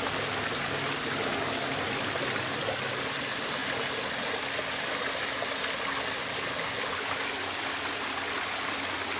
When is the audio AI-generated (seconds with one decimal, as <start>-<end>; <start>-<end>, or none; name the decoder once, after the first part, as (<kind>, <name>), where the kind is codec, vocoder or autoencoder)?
none